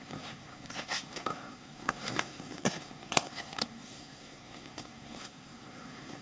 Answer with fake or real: fake